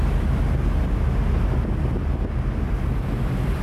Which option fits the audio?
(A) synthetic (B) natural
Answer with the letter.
B